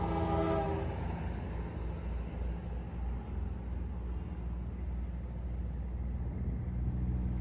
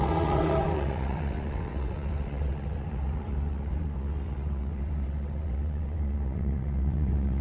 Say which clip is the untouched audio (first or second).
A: first